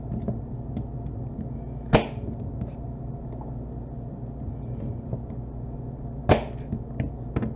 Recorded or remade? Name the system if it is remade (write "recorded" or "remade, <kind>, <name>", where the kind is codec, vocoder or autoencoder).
recorded